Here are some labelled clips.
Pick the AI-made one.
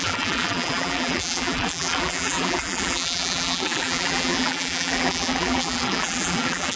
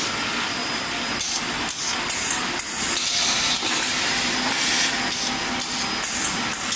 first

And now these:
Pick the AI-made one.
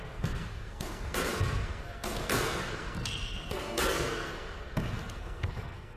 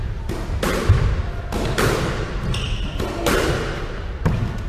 first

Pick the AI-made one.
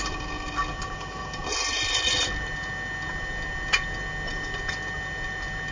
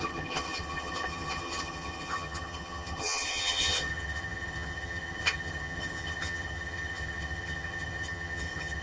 second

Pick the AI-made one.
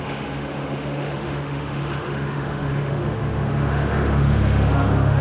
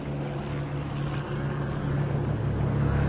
first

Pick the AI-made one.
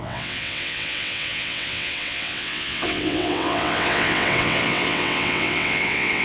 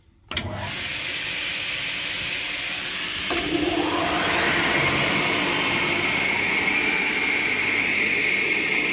first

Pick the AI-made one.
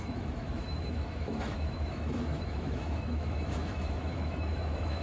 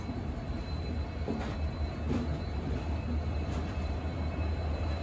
first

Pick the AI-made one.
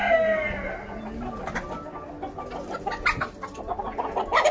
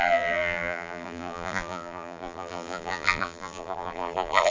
second